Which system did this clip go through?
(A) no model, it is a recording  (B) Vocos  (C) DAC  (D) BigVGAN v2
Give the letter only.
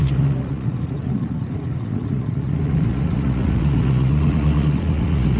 B